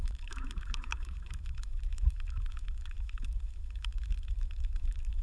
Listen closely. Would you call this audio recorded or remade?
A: remade